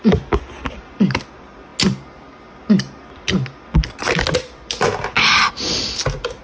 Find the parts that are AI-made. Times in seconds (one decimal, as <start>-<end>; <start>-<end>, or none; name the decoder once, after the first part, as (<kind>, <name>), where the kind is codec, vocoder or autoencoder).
none